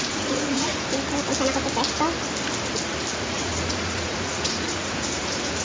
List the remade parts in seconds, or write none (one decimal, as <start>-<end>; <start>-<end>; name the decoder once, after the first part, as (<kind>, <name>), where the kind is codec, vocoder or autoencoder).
0.0-0.7 (vocoder, Vocos); 3.1-5.6